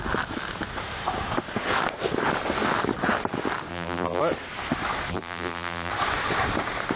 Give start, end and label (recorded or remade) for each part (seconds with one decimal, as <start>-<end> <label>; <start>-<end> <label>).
0.0-3.7 recorded; 3.7-4.2 remade; 4.2-5.1 recorded; 5.1-5.9 remade; 5.9-7.0 recorded

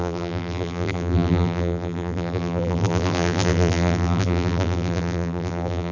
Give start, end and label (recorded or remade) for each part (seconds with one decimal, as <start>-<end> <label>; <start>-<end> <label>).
0.0-5.9 remade

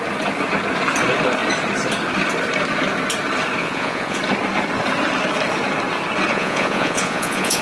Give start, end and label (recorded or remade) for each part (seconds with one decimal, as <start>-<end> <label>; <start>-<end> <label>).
0.0-3.6 recorded; 3.6-4.2 remade; 4.2-6.3 recorded; 6.3-7.6 remade